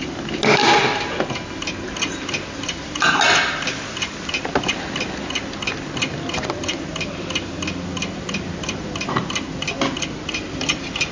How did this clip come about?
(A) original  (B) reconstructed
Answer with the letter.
A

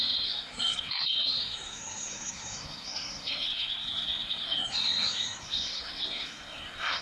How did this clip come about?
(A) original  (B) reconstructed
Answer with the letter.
B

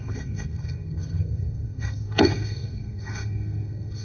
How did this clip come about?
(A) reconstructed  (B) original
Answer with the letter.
A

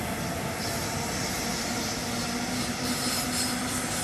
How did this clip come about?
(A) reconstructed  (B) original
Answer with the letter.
B